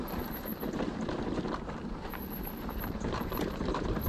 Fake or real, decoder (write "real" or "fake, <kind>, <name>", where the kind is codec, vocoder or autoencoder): fake, vocoder, BigVGAN v2